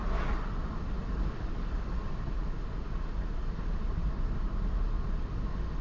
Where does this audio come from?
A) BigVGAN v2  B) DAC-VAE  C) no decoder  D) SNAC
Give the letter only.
C